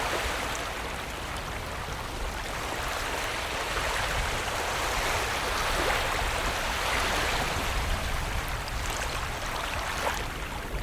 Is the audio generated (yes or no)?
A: no